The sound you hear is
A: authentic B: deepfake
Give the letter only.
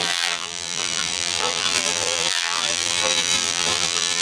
B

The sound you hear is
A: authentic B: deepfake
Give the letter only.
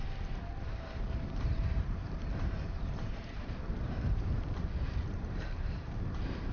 B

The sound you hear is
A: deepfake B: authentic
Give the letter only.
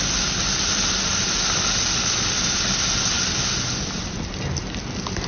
B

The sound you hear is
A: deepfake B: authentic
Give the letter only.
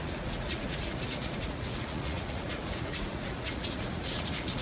A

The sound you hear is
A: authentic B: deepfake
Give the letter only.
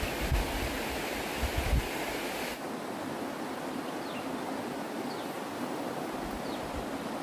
A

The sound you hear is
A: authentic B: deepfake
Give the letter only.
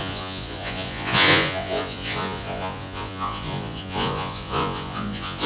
B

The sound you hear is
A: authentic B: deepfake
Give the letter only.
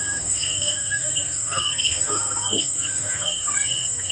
B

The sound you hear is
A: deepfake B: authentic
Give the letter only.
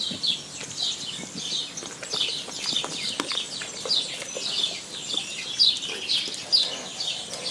B